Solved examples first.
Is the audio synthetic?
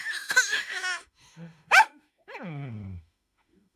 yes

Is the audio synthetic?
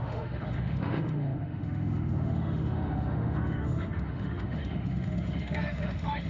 yes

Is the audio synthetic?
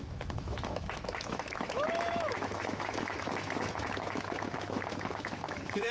yes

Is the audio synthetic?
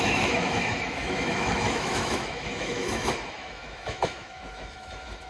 yes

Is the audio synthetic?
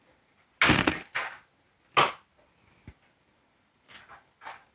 no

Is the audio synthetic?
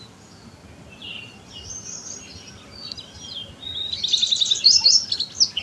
no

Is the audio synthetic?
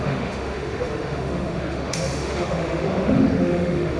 yes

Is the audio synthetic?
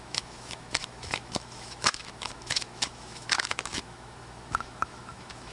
yes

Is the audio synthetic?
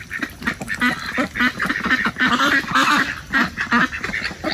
no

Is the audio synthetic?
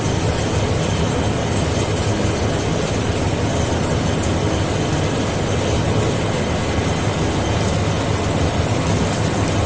no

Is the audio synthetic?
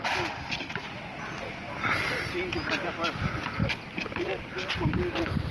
no